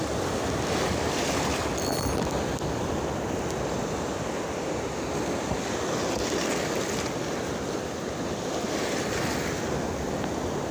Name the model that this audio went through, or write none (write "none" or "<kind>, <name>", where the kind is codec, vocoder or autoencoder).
none